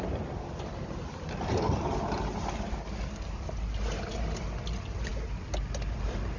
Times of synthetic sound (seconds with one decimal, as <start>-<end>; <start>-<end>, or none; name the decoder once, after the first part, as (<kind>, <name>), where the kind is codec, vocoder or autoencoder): none